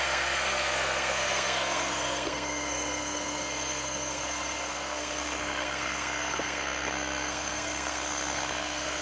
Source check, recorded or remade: remade